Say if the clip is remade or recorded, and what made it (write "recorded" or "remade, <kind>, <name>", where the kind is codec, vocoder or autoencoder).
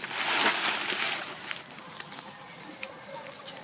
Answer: recorded